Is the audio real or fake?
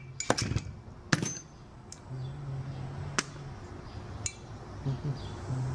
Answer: real